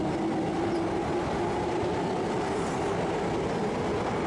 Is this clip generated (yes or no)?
no